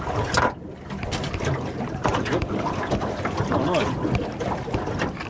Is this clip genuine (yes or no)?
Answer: yes